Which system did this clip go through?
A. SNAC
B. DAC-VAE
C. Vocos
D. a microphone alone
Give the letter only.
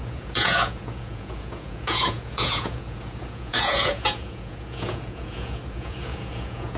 C